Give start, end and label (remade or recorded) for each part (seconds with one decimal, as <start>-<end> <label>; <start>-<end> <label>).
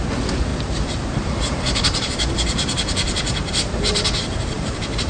0.0-0.5 recorded; 0.5-2.3 remade; 2.3-3.4 recorded; 3.4-5.1 remade